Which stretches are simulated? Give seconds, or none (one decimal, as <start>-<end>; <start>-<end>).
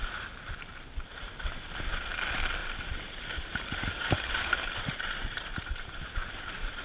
2.6-6.8